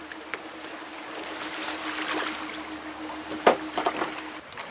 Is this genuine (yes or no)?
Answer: yes